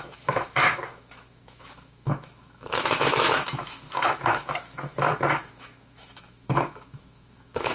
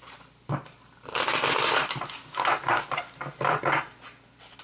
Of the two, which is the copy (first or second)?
first